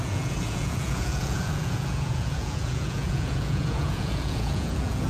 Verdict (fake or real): fake